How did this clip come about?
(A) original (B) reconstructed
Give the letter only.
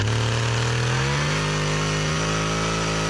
A